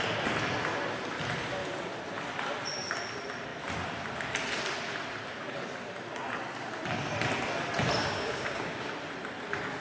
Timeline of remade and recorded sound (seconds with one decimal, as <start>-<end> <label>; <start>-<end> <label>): 0.0-8.0 recorded; 8.0-8.9 remade; 8.9-9.8 recorded